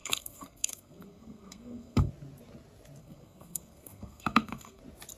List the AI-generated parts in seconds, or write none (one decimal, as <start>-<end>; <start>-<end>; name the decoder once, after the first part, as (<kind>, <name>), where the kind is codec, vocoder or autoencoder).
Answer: 0.0-2.1 (codec, SNAC); 3.0-4.8